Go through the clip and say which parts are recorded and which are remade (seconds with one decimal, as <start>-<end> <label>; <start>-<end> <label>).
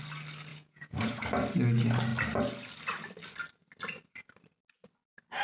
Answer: 0.0-0.5 recorded; 0.5-1.2 remade; 1.2-5.4 recorded